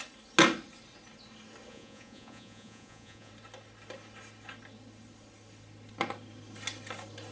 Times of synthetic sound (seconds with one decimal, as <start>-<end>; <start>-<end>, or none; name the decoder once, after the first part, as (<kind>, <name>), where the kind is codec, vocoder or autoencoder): 1.7-3.3 (vocoder, Vocos)